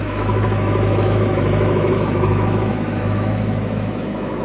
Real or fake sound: fake